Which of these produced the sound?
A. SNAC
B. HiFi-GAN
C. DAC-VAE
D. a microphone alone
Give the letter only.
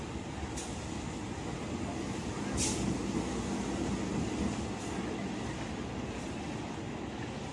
D